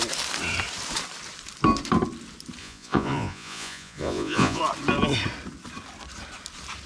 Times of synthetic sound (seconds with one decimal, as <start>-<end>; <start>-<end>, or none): 2.6-4.6